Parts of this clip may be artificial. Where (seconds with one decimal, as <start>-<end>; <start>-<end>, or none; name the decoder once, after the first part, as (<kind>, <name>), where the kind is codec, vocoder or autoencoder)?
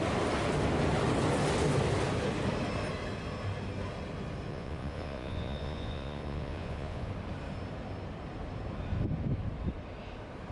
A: 4.5-7.1 (vocoder, Vocos)